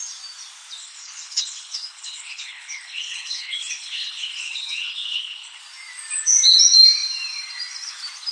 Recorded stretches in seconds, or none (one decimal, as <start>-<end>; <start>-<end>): 0.0-0.8; 5.6-8.3